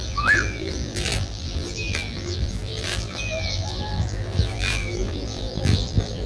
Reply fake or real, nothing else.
fake